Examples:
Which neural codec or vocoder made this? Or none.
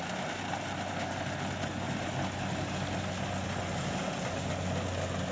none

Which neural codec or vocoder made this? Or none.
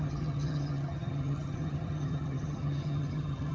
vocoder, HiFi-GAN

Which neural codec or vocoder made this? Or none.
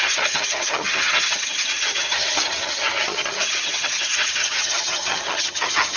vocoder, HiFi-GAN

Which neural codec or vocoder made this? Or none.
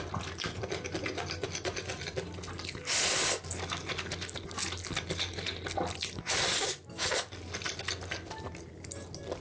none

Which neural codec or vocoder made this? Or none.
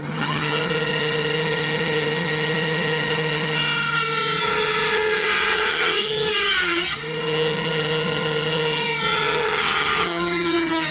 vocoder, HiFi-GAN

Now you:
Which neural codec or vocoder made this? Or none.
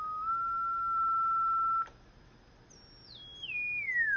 none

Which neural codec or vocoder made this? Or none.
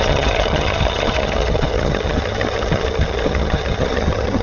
vocoder, HiFi-GAN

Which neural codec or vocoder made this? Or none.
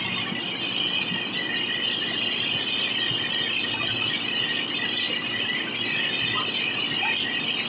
none